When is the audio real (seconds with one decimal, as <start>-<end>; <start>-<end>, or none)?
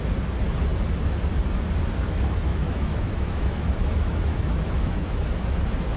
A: 0.0-2.5; 5.2-6.0